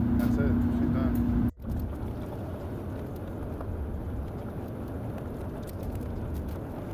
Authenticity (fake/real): real